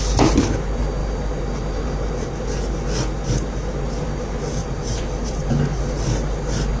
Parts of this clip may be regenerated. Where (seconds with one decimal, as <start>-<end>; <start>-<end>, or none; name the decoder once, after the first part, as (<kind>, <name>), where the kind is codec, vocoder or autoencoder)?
1.0-2.3 (vocoder, BigVGAN v2); 4.6-5.8